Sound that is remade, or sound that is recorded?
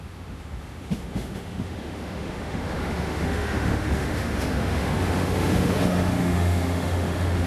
remade